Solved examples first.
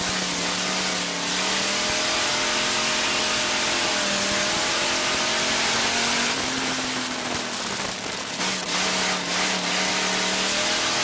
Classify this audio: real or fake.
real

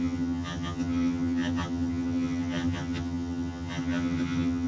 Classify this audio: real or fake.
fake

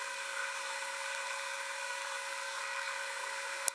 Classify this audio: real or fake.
fake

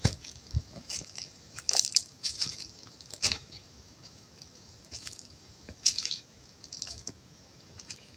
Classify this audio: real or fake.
fake